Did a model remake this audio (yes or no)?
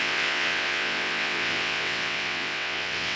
yes